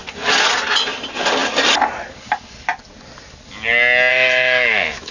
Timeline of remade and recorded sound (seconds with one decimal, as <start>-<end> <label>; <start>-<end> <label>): 0.0-4.1 recorded; 4.1-5.1 remade